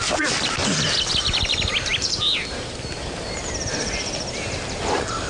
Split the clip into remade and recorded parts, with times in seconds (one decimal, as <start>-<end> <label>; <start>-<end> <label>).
0.0-1.9 recorded; 1.9-5.3 remade